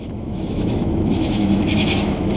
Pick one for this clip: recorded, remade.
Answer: remade